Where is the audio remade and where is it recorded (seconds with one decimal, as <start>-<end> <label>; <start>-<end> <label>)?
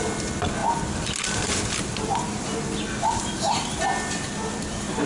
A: 0.0-5.1 recorded